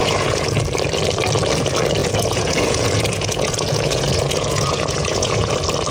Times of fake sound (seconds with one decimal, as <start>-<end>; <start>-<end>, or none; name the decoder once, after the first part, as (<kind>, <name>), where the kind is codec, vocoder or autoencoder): 0.0-0.6 (vocoder, Vocos); 2.0-5.5